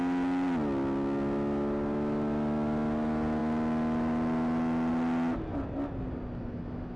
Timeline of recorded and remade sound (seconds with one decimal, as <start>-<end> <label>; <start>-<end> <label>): 0.0-7.0 recorded